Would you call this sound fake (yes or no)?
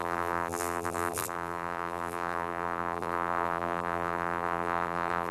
yes